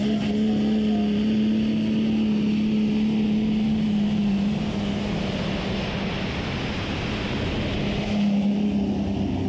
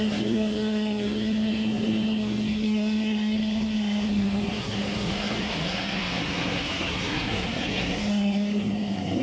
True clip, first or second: first